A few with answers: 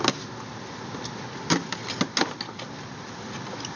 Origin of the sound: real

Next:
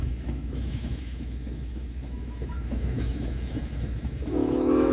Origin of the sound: fake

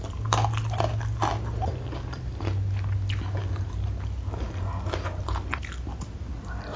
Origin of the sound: real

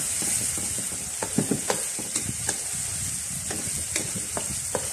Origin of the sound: real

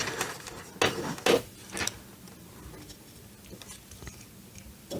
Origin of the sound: real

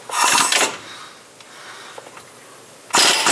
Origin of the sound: real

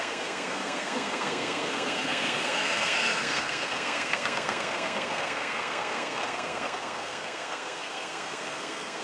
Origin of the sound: fake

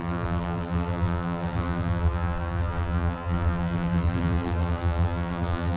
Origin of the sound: fake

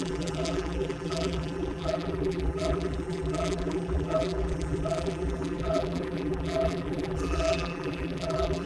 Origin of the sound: fake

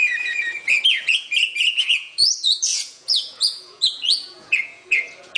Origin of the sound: fake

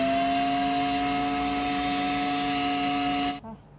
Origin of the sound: real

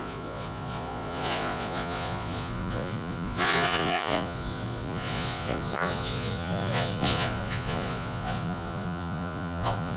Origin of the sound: fake